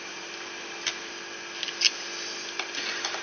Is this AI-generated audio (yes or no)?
no